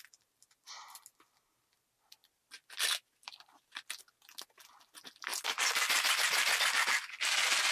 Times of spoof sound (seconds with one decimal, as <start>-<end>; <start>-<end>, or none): 2.2-4.0